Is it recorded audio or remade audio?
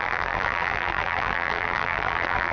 remade